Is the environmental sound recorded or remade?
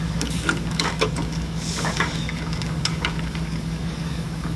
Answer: remade